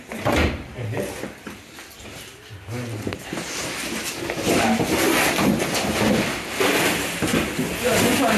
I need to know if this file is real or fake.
real